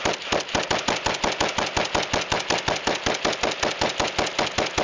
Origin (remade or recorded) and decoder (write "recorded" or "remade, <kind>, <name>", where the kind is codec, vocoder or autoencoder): recorded